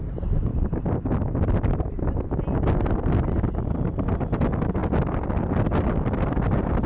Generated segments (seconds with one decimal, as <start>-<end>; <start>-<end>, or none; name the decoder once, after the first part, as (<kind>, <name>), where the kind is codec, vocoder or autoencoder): none